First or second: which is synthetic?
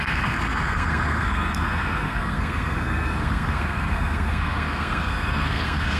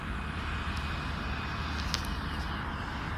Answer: first